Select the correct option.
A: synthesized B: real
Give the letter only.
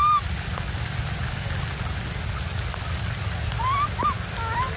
B